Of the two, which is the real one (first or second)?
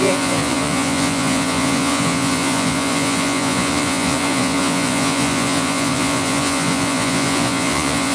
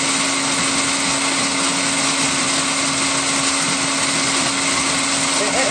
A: second